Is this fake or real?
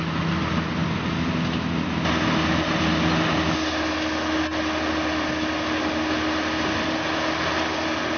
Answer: real